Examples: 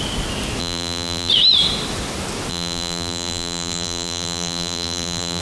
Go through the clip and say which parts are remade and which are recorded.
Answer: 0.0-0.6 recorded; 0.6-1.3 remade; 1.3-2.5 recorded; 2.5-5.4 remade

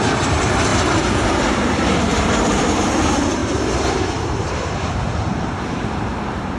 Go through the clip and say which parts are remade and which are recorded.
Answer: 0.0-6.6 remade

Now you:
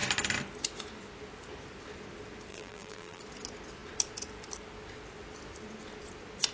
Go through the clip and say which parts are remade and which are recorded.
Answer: 0.0-2.5 recorded; 2.5-3.2 remade; 3.2-6.5 recorded

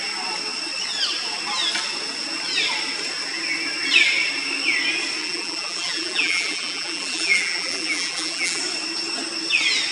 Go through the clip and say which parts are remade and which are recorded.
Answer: 0.0-5.2 recorded; 5.2-8.6 remade; 8.6-9.9 recorded

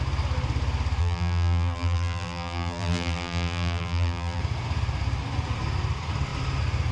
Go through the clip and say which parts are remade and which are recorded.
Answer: 0.0-1.0 recorded; 1.0-4.4 remade; 4.4-6.9 recorded

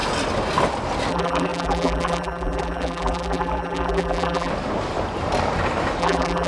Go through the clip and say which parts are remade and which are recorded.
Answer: 0.0-1.1 recorded; 1.1-4.5 remade; 4.5-6.0 recorded; 6.0-6.5 remade

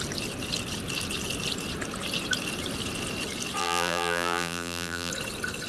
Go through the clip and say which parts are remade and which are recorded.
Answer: 0.0-3.6 recorded; 3.6-5.1 remade; 5.1-5.7 recorded

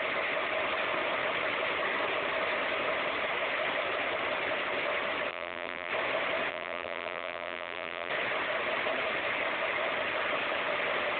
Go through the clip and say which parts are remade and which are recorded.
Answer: 0.0-5.3 recorded; 5.3-5.9 remade; 5.9-6.5 recorded; 6.5-8.1 remade; 8.1-11.2 recorded